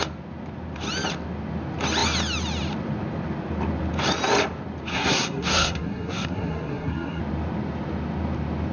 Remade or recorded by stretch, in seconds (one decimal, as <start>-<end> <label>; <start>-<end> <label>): 0.0-4.9 recorded; 4.9-7.2 remade; 7.2-8.7 recorded